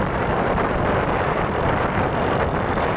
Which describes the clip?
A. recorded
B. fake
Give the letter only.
A